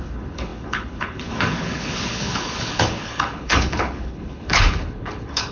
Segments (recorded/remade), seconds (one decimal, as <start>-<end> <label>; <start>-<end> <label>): 0.0-5.5 remade